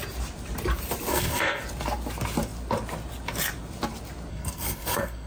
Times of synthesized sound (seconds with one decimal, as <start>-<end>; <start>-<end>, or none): 1.1-1.6; 4.3-5.3